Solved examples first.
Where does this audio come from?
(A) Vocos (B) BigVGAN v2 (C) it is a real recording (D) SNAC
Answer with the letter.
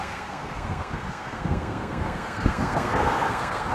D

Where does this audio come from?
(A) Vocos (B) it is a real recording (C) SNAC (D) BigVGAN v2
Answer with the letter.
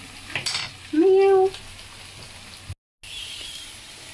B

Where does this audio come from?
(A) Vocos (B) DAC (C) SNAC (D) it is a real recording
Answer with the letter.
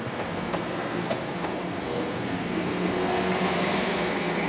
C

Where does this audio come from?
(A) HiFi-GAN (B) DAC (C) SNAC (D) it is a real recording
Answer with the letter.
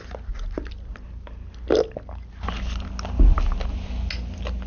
D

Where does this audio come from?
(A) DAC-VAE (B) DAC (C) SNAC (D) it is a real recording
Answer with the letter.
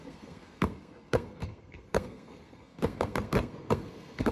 C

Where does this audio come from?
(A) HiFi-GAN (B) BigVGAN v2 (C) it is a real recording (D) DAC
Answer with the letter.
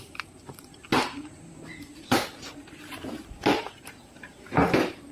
B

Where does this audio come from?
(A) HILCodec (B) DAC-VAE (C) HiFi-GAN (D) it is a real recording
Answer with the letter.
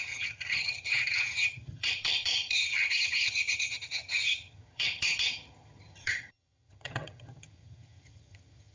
C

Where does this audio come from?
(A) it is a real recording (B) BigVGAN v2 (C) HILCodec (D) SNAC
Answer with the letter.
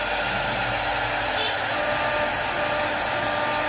A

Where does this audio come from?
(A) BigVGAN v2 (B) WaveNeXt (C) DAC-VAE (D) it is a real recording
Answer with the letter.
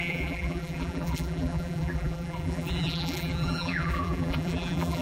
A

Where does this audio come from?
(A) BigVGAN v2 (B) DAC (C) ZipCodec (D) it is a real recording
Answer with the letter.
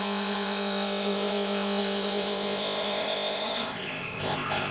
C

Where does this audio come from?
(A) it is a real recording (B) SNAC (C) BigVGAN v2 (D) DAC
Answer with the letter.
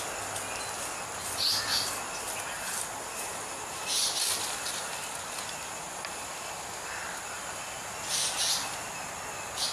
A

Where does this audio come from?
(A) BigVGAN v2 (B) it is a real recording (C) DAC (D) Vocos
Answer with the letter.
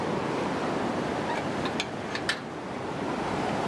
B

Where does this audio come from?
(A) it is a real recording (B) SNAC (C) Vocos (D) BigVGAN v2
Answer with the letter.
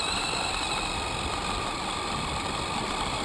A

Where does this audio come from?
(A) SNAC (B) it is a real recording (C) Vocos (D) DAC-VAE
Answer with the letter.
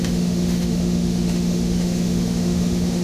D